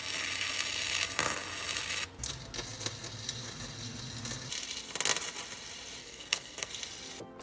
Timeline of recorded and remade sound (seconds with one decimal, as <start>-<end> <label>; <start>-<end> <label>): 0.0-6.0 recorded; 6.0-6.7 remade; 6.7-7.4 recorded